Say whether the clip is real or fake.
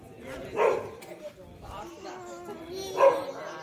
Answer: real